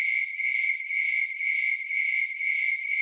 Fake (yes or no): no